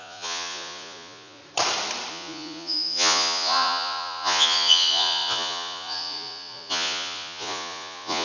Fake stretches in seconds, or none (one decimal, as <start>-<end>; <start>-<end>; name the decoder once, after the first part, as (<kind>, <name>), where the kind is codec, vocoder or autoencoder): 0.0-1.4 (vocoder, Vocos); 2.1-8.2